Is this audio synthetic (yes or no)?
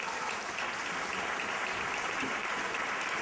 no